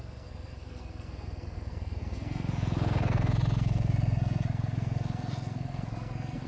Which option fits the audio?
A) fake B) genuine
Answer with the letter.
A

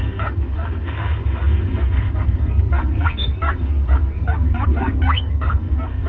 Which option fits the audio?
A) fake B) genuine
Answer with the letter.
A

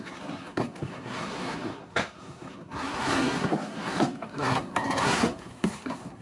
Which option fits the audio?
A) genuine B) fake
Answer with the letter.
B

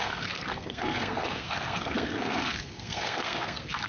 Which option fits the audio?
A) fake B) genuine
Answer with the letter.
A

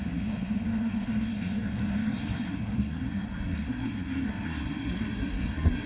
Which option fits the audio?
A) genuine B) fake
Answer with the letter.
B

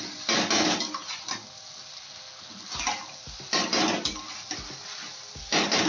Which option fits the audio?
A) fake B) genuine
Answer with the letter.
B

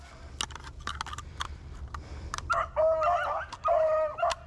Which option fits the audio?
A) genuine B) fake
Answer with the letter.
A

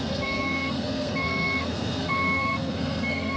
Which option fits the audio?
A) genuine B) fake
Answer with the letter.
B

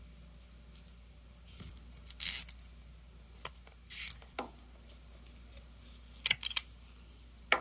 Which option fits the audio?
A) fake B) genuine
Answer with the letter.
B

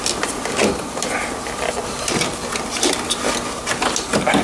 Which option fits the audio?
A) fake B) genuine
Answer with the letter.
B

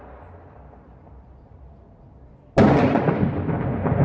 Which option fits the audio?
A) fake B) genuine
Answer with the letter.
B